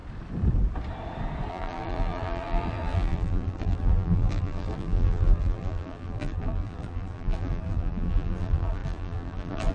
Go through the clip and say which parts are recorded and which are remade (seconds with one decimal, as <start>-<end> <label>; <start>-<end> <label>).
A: 0.0-1.5 recorded; 1.5-9.7 remade